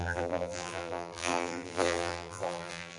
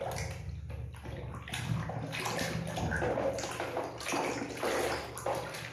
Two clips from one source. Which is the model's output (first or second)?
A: first